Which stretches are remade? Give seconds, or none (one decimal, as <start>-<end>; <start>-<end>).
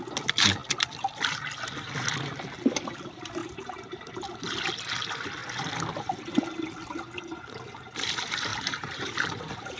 3.4-4.2; 8.5-9.8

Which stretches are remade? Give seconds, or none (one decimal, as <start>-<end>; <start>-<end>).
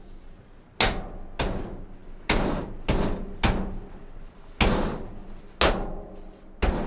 none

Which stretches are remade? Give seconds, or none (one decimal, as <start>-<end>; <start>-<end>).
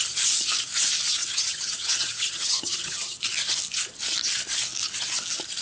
1.2-3.2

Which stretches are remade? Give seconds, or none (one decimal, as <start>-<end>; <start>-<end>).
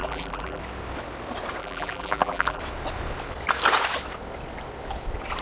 0.0-0.6; 1.6-2.6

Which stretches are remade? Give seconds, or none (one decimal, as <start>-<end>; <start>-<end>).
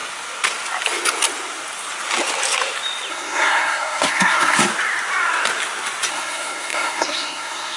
3.1-4.7; 6.1-7.8